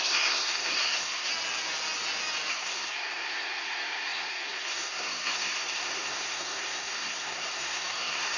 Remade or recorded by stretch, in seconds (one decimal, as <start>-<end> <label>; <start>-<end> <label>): 0.0-1.3 remade; 1.3-2.5 recorded; 2.5-8.4 remade

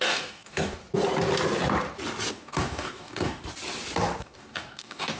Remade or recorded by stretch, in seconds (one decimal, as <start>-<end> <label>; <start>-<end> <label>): 0.0-0.8 remade; 0.8-2.3 recorded; 2.3-3.4 remade; 3.4-4.2 recorded; 4.2-5.2 remade

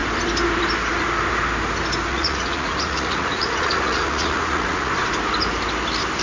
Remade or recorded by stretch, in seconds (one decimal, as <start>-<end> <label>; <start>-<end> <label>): 0.0-2.1 recorded; 2.1-4.9 remade; 4.9-6.2 recorded